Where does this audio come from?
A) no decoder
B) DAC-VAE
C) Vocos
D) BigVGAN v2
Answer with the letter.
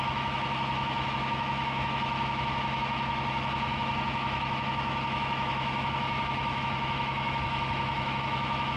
B